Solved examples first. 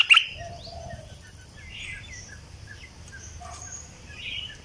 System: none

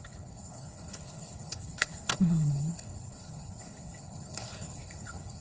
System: codec, HILCodec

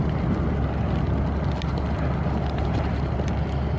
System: none